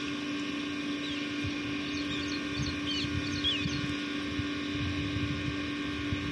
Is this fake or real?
real